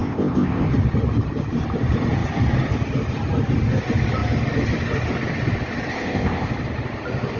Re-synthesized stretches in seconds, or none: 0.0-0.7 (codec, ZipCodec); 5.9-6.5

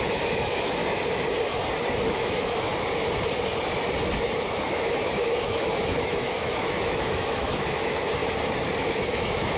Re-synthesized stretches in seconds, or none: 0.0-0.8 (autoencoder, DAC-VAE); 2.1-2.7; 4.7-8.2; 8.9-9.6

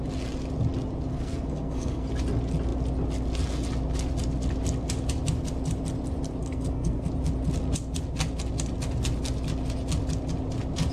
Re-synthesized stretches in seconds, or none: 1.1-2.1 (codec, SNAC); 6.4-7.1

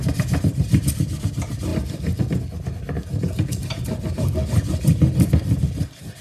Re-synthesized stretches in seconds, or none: none

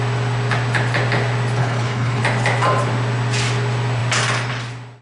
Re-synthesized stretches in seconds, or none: 1.6-2.2 (codec, HILCodec)

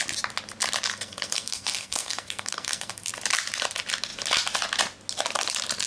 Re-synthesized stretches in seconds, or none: 0.9-3.1 (codec, SNAC)

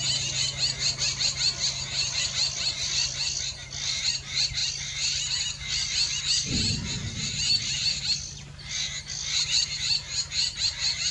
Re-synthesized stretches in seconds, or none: none